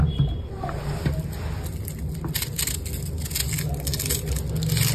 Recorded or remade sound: recorded